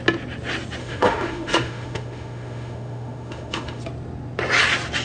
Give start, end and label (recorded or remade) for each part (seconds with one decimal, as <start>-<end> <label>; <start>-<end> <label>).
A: 0.0-0.8 recorded; 0.8-3.8 remade; 3.8-5.0 recorded